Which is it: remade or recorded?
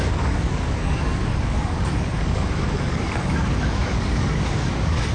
remade